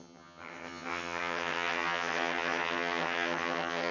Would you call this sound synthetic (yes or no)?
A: yes